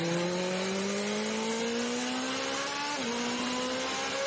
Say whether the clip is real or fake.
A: real